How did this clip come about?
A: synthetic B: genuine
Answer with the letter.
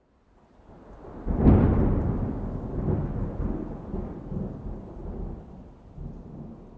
B